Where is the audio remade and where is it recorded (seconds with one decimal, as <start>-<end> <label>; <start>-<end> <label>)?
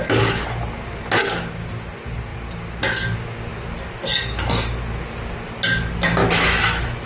0.0-6.2 recorded; 6.2-7.1 remade